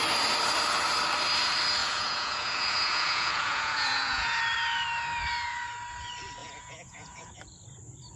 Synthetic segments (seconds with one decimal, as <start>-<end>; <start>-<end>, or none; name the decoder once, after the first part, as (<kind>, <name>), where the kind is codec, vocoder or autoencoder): 1.8-4.4 (vocoder, Vocos); 6.4-7.3